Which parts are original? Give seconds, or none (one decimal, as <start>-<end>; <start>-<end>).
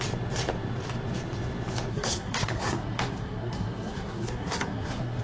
0.0-1.9